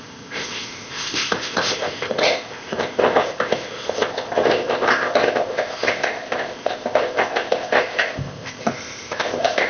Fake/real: fake